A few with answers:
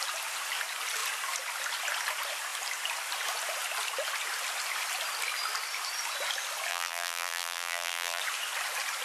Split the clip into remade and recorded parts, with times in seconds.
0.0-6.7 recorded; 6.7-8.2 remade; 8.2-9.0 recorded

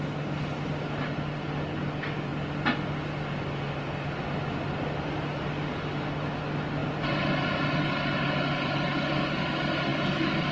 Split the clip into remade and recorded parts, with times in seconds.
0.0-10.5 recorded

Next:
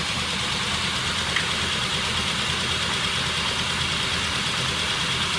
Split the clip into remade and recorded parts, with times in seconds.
0.0-1.0 remade; 1.0-1.6 recorded; 1.6-2.1 remade; 2.1-5.4 recorded

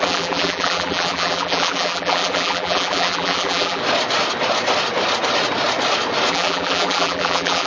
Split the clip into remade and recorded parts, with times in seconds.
0.0-3.8 remade; 3.8-6.3 recorded; 6.3-7.7 remade

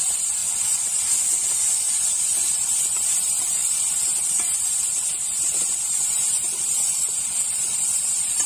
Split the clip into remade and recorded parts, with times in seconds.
0.0-0.4 remade; 0.4-1.8 recorded; 1.8-8.5 remade

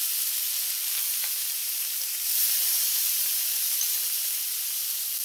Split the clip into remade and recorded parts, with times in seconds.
0.0-1.6 recorded; 1.6-4.0 remade; 4.0-5.2 recorded

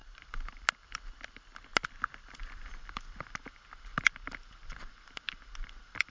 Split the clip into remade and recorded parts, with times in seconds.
0.0-0.6 remade; 0.6-6.1 recorded